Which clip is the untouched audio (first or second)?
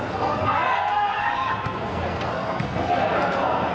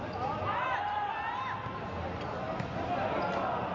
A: second